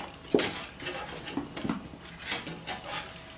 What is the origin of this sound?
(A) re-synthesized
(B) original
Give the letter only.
B